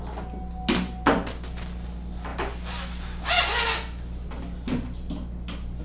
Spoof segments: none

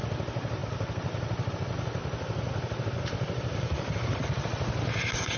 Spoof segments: 0.6-1.5; 2.0-5.4

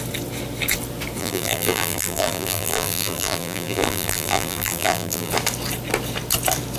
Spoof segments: 1.2-5.3

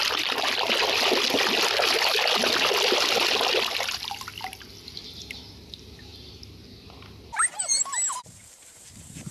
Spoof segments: 5.0-6.1; 8.1-9.3

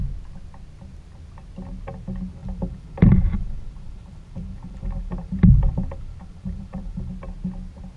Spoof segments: 2.4-7.1

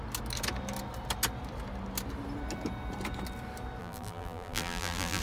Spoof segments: 3.8-5.2

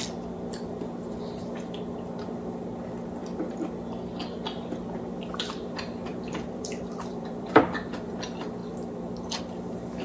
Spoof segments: 6.1-8.1